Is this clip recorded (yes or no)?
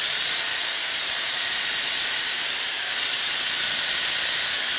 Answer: no